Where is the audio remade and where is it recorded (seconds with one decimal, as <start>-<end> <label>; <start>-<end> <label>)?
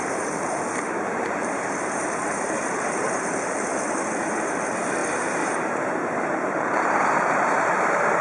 0.0-8.2 remade